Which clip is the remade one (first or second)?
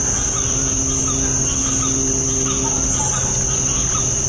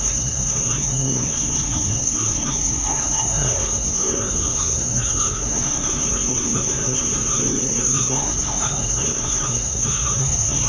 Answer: second